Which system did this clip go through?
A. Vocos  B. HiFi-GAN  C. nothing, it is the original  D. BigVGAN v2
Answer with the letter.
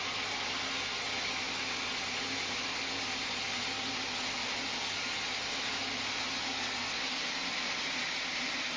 C